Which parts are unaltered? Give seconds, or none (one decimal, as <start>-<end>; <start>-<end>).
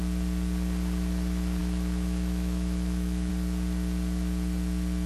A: 0.0-1.6; 3.3-5.1